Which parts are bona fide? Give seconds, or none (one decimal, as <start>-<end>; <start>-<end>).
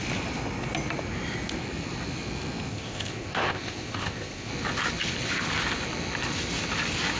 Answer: 0.0-2.7; 4.5-7.2